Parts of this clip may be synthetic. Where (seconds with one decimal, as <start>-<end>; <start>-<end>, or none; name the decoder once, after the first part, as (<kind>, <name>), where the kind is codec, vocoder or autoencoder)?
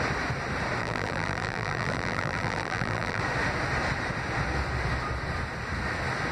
0.8-3.2 (vocoder, BigVGAN v2)